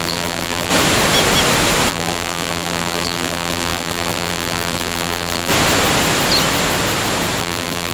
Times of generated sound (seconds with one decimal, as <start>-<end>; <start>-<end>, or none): 0.0-0.7; 1.9-5.5; 7.4-7.9